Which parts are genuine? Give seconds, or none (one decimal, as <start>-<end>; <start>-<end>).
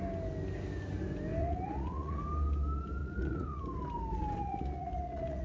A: 0.0-1.4; 2.2-3.0; 3.6-4.4